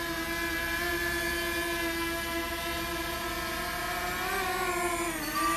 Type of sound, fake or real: real